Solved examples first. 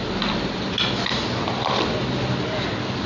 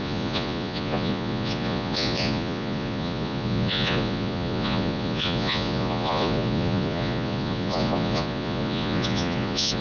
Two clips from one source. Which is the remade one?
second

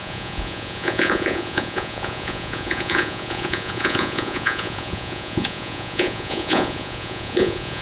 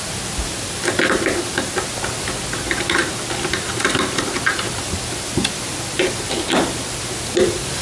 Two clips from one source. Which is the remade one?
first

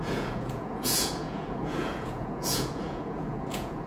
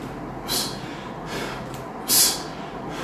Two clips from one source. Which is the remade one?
first